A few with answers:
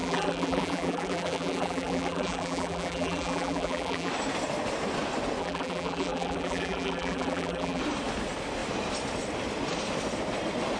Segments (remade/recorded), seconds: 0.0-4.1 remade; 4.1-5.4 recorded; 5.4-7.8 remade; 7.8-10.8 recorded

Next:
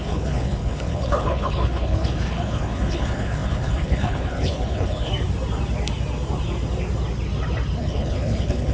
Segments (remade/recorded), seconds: 0.0-5.1 remade; 5.1-7.8 recorded; 7.8-8.7 remade

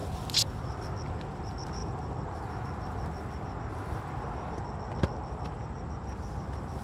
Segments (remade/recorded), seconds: 0.0-6.8 recorded

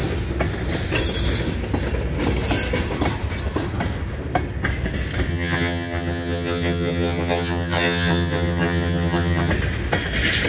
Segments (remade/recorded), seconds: 0.0-5.3 recorded; 5.3-9.5 remade; 9.5-10.5 recorded

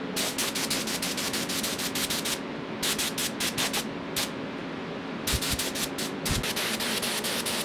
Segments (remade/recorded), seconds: 0.0-3.2 recorded; 3.2-3.8 remade; 3.8-4.6 recorded; 4.6-5.7 remade; 5.7-7.6 recorded

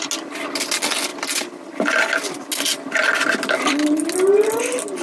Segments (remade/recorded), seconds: 0.0-5.0 recorded

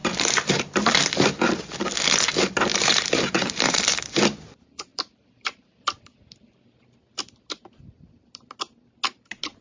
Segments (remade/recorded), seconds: 0.0-0.8 remade; 0.8-2.7 recorded; 2.7-3.8 remade; 3.8-4.9 recorded; 4.9-5.7 remade; 5.7-9.6 recorded

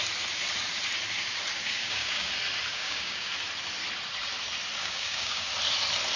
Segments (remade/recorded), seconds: 0.0-1.6 recorded; 1.6-2.3 remade; 2.3-2.7 recorded; 2.7-3.3 remade; 3.3-4.8 recorded; 4.8-5.5 remade; 5.5-6.2 recorded